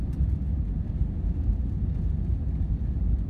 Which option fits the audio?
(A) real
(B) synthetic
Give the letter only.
A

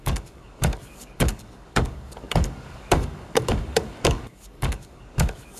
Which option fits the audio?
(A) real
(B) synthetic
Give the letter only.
B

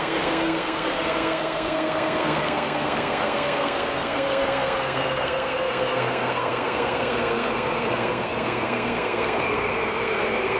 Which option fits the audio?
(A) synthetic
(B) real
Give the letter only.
A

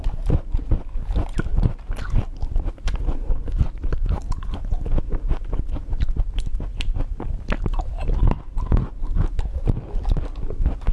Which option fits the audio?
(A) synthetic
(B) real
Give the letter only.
B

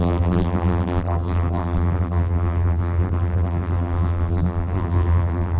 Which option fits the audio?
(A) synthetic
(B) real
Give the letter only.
A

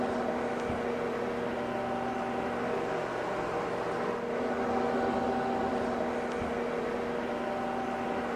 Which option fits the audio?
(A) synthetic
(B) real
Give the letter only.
B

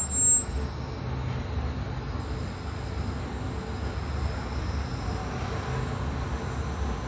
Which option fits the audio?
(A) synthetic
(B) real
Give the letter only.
B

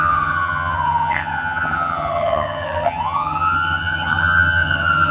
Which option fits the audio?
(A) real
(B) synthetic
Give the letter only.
B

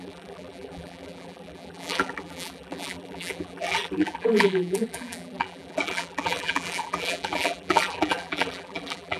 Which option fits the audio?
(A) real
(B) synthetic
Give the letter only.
B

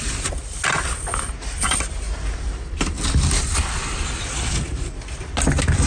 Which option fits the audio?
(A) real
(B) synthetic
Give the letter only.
A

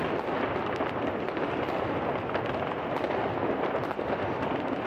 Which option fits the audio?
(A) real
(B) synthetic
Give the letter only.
A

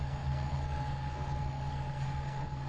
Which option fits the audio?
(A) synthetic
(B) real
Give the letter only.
A